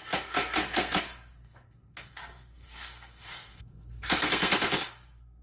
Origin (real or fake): fake